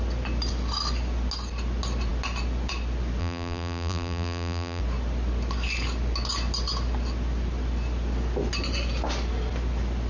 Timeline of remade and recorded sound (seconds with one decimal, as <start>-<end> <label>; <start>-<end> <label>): 0.0-3.2 recorded; 3.2-4.8 remade; 4.8-10.1 recorded